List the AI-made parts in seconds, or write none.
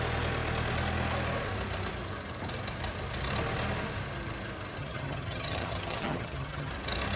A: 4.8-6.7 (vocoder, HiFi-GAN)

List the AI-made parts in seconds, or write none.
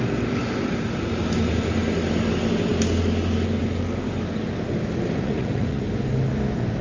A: 5.2-5.8 (vocoder, Vocos)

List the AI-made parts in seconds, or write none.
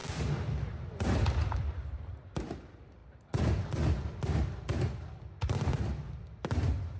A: none